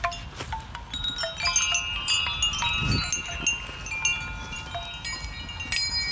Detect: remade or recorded recorded